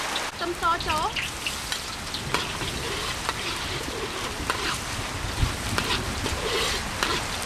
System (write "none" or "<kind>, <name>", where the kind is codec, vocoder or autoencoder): none